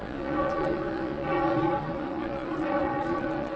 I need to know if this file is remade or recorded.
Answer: remade